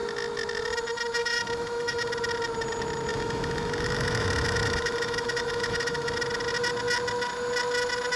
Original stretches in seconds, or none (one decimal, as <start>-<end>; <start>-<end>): 0.0-1.2; 2.1-3.1; 6.1-8.2